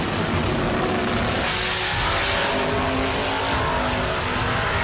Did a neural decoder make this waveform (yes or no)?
no